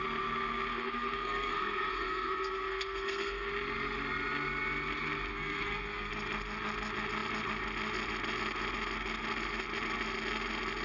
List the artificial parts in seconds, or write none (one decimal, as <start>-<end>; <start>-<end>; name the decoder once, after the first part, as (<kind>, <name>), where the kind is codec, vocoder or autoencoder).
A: 0.7-3.5 (codec, SNAC); 5.3-6.1